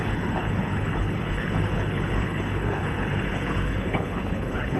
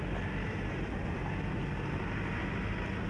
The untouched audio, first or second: second